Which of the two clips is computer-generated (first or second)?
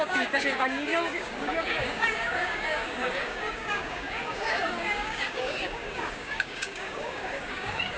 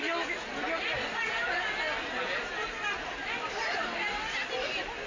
first